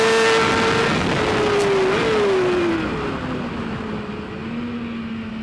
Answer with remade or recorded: recorded